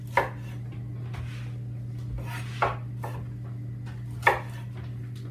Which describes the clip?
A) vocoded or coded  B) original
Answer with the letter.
B